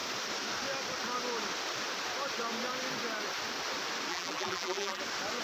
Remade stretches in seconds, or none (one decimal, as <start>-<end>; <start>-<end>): 4.1-5.0